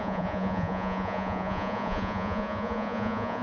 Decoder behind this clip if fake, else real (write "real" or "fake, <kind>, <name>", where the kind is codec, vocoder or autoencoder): fake, vocoder, Vocos